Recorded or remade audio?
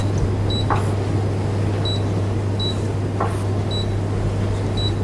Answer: recorded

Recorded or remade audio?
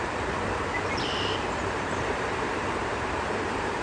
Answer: remade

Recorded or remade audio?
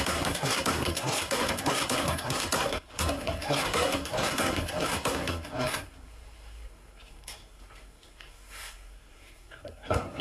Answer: remade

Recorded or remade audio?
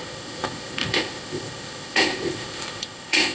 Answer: remade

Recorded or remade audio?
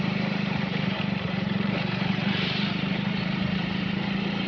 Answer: remade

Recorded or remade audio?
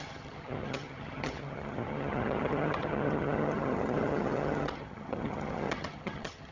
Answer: remade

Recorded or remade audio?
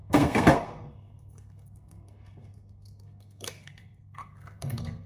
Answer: remade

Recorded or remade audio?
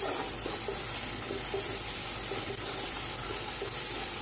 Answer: remade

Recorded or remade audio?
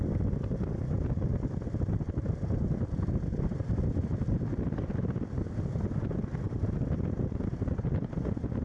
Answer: recorded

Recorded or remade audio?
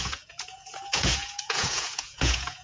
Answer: remade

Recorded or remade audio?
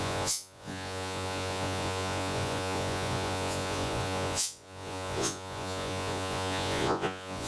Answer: remade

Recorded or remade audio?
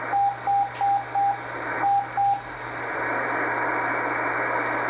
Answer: recorded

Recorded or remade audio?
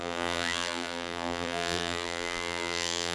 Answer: remade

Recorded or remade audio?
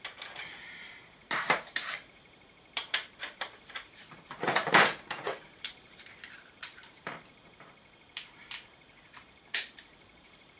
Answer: remade